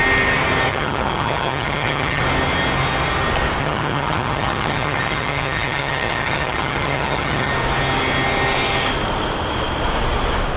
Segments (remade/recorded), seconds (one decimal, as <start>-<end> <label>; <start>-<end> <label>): 0.0-0.7 recorded; 0.7-2.2 remade; 2.2-3.6 recorded; 3.6-7.5 remade; 7.5-10.6 recorded